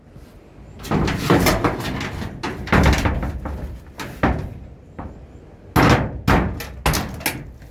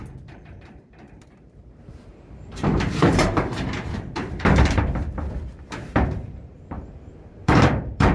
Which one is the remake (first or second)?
second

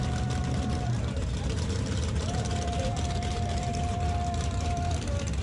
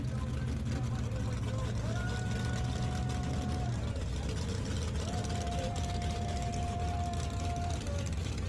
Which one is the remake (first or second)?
first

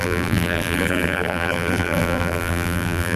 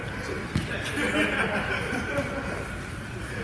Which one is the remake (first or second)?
first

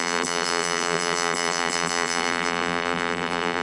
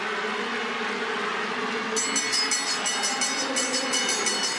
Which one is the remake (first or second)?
first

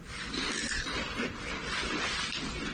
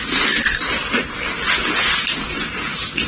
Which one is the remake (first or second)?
first